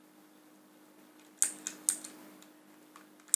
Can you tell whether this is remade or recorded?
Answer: recorded